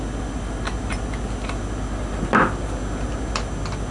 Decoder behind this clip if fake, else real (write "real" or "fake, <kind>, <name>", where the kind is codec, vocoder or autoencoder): real